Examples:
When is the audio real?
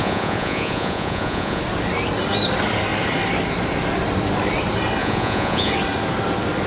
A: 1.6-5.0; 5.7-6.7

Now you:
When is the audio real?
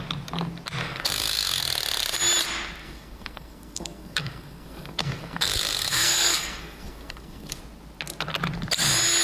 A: 0.0-0.8; 1.6-2.8; 7.6-9.2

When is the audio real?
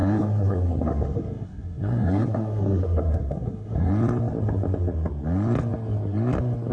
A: 3.9-6.7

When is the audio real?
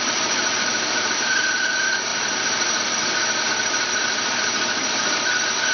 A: 0.0-5.7